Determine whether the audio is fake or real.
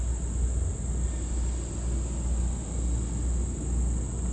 real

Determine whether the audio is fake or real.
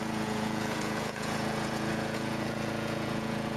fake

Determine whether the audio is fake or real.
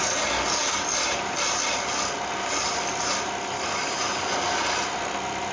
real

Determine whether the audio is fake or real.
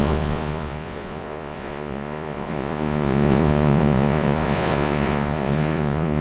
fake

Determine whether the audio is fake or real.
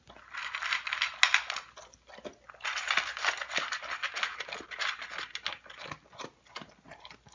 real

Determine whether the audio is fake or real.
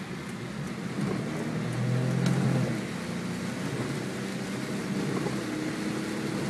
real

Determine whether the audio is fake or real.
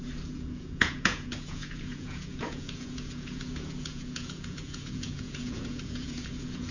fake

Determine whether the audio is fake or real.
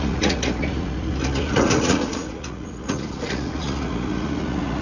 fake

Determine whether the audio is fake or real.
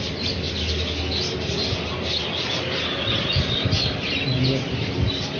real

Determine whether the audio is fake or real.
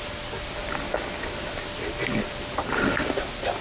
real